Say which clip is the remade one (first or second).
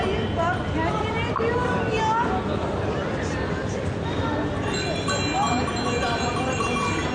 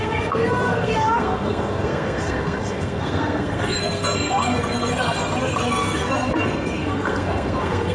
second